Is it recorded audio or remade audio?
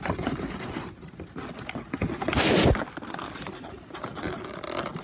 recorded